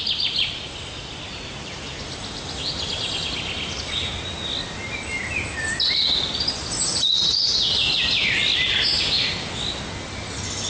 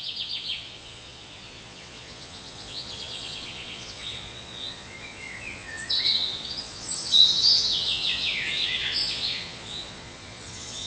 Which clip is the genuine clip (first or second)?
first